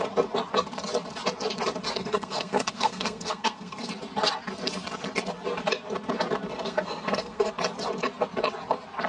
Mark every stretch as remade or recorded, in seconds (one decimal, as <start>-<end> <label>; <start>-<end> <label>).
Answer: 0.0-2.0 recorded; 2.0-3.9 remade; 3.9-6.5 recorded; 6.5-7.5 remade; 7.5-9.1 recorded